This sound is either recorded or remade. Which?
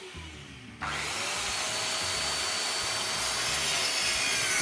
recorded